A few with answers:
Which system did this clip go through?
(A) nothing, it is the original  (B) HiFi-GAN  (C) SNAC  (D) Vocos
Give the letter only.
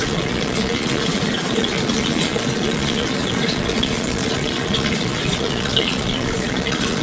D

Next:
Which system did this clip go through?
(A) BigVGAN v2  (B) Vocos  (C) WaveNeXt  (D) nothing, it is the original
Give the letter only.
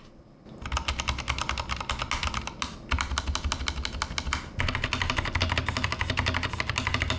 D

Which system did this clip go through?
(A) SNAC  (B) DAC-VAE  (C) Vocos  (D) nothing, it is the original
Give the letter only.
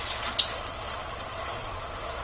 C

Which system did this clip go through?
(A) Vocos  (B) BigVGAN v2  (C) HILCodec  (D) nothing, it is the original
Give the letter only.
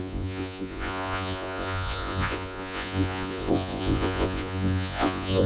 A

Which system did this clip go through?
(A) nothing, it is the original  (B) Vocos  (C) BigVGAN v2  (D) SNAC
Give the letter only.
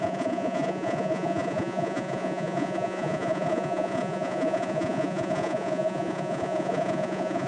B